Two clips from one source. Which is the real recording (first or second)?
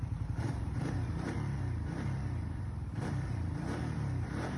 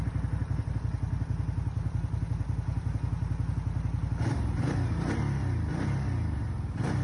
second